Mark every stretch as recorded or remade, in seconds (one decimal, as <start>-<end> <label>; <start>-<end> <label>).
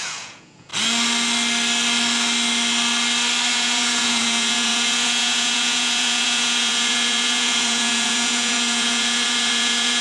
0.0-0.7 remade; 0.7-3.5 recorded; 3.5-10.0 remade